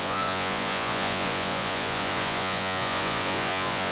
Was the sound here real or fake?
fake